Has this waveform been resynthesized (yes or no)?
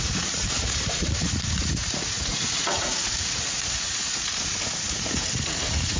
yes